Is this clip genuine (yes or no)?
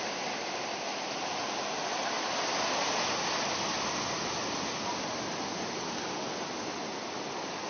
yes